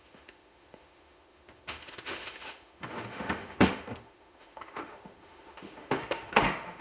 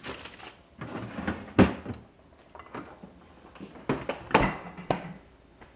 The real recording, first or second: second